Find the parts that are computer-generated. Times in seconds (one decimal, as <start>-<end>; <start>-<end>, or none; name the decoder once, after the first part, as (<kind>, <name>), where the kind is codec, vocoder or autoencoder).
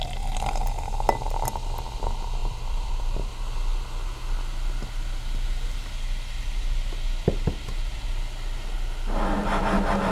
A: 2.4-3.2 (vocoder, BigVGAN v2)